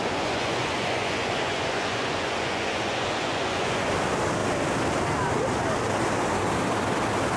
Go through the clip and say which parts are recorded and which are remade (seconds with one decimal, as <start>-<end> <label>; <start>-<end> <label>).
0.0-3.9 remade; 3.9-7.4 recorded